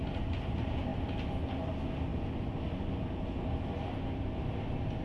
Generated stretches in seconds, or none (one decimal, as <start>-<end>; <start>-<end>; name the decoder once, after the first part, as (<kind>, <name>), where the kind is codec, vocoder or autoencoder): none